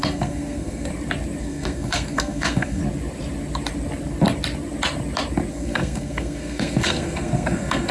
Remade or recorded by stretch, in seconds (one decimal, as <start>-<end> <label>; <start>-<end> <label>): 0.0-0.9 remade; 0.9-1.4 recorded; 1.4-2.8 remade; 2.8-5.5 recorded; 5.5-7.9 remade